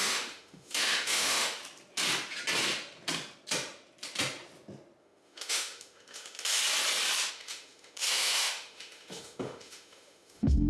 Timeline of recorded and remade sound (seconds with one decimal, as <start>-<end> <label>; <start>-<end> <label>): 0.0-1.6 remade; 1.6-5.0 recorded; 5.0-6.6 remade; 6.6-7.3 recorded; 7.3-10.7 remade